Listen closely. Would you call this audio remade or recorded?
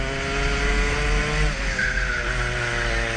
recorded